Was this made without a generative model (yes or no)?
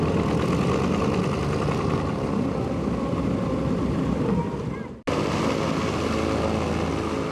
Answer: yes